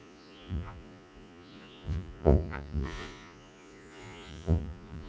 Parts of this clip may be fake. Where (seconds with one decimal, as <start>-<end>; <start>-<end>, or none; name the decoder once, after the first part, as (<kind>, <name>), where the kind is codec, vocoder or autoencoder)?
0.0-5.1 (vocoder, Vocos)